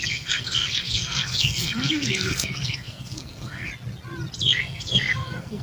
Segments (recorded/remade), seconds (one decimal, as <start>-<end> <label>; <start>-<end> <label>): 0.0-3.7 remade; 3.7-4.4 recorded; 4.4-5.6 remade